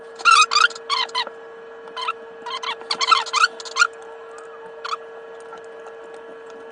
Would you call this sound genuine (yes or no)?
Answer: yes